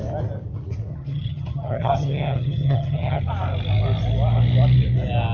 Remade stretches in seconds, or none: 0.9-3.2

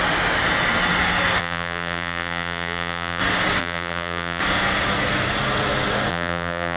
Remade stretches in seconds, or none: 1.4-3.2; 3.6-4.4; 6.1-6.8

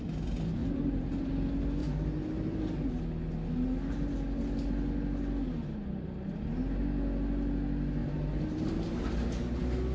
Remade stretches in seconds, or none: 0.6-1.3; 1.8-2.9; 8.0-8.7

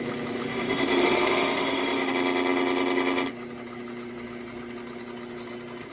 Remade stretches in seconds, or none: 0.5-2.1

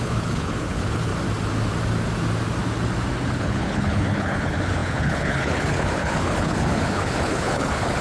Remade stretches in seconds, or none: 0.0-1.1; 3.3-8.0